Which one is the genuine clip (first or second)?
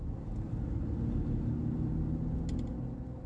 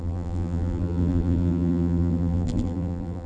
first